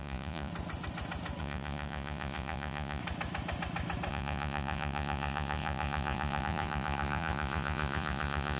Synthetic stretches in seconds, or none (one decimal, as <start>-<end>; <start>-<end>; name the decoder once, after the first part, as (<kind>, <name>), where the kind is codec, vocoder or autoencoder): 0.0-0.5 (vocoder, Vocos); 1.4-3.0; 4.1-8.6